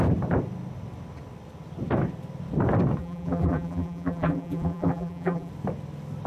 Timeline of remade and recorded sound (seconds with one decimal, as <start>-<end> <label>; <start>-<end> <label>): 0.0-3.0 recorded; 3.0-5.5 remade; 5.5-6.3 recorded